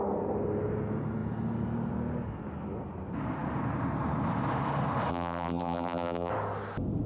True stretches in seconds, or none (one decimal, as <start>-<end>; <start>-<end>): 0.0-5.1; 6.3-7.1